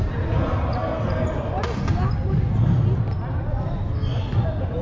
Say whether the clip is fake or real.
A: real